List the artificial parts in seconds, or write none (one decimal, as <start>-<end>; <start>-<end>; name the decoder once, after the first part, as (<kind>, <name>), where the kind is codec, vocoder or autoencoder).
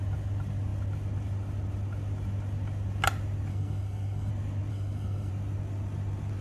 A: 3.5-4.3 (codec, SNAC); 4.7-5.3